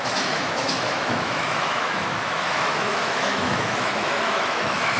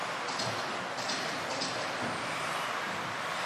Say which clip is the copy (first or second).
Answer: first